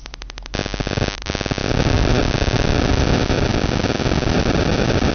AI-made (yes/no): no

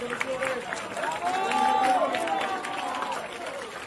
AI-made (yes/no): no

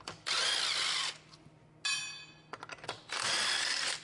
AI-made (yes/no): no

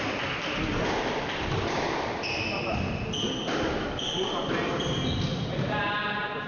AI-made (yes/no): no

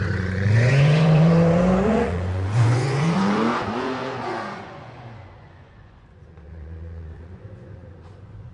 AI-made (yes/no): yes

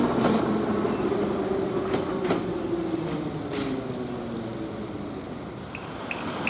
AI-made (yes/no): no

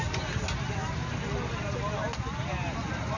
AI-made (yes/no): no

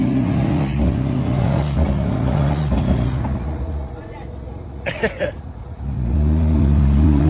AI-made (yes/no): yes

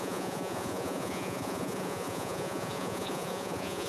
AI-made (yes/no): yes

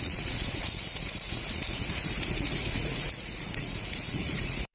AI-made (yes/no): yes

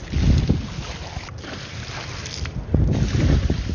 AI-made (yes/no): no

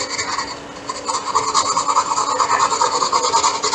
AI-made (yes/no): no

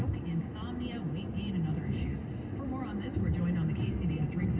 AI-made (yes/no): no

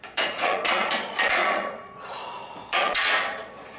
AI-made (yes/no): yes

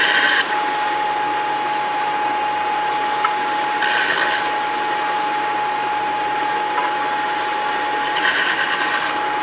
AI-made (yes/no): no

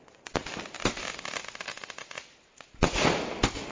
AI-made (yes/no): no